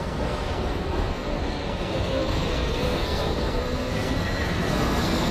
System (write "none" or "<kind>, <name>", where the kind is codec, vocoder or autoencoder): codec, SNAC